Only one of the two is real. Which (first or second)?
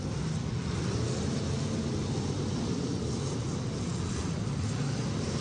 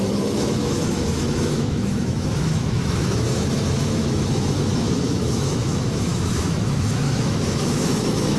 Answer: first